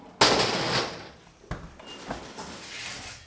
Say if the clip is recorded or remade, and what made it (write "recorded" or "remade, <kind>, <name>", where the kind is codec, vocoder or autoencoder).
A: recorded